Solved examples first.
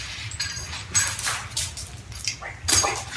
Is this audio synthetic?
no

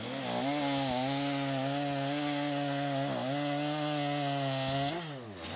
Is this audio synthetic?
no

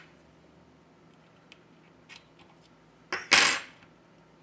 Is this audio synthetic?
no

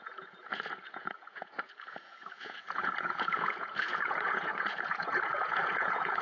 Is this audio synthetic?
yes